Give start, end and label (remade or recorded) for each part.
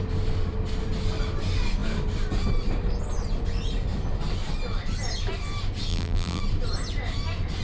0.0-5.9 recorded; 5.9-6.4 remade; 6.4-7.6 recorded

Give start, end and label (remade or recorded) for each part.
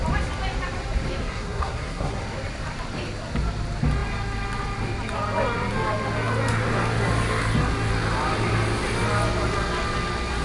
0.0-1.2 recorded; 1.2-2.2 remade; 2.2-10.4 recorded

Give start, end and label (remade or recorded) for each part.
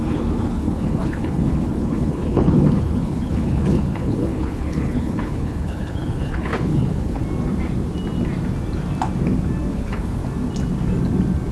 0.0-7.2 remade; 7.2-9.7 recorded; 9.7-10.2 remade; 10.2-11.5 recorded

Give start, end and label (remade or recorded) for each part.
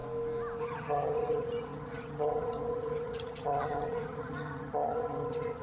0.0-0.6 recorded; 0.6-5.6 remade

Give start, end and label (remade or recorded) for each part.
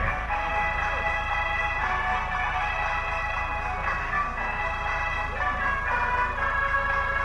0.0-0.5 remade; 0.5-4.0 recorded; 4.0-4.6 remade; 4.6-7.2 recorded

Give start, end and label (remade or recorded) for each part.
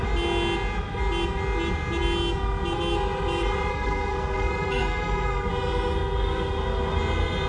0.0-3.7 recorded; 3.7-5.5 remade; 5.5-7.5 recorded